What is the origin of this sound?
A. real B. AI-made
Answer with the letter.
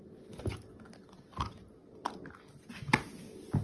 A